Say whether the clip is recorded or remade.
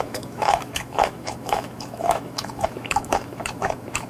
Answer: remade